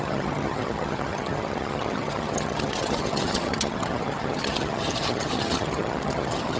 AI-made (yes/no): yes